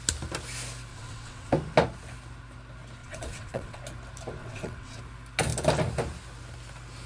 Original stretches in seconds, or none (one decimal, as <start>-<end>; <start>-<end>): 0.0-0.9; 1.5-3.0; 3.8-4.4; 5.0-7.1